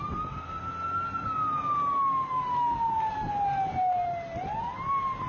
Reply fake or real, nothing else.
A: real